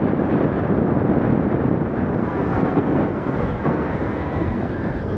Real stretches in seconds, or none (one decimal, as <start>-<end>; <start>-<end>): 0.0-2.2